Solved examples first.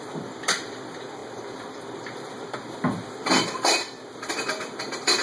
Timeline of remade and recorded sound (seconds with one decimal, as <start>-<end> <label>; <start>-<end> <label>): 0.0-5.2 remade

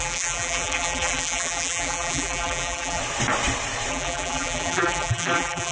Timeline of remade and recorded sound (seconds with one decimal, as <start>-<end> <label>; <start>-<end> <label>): 0.0-3.0 remade; 3.0-3.9 recorded; 3.9-5.7 remade

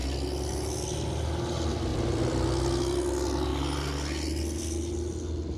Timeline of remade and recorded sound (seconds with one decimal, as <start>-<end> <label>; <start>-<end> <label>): 0.0-1.9 recorded; 1.9-2.8 remade; 2.8-5.6 recorded

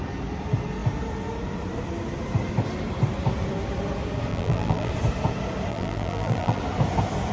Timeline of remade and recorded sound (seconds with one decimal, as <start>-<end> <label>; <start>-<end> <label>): 0.0-4.3 recorded; 4.3-4.9 remade; 4.9-5.7 recorded; 5.7-6.6 remade; 6.6-7.3 recorded

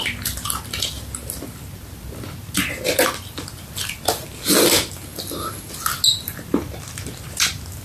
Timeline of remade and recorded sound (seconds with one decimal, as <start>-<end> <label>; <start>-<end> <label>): 0.0-7.8 recorded